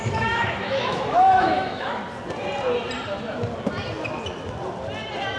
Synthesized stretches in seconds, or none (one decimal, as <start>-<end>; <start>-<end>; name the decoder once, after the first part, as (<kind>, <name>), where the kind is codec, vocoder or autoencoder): 0.0-2.0 (autoencoder, DAC-VAE)